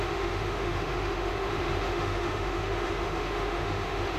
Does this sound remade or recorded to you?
remade